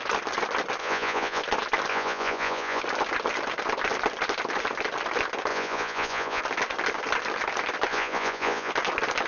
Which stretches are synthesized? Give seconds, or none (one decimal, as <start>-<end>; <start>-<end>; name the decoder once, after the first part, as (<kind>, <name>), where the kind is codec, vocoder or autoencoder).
0.8-1.4 (vocoder, Vocos); 1.9-2.8; 5.5-6.4; 7.9-8.7